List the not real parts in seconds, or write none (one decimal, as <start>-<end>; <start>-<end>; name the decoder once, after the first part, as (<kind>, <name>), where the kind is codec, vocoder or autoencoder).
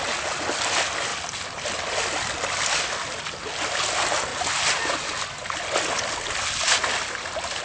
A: none